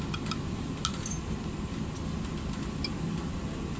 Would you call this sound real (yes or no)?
yes